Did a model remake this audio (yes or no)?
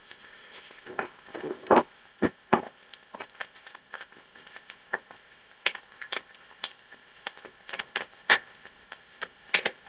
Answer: yes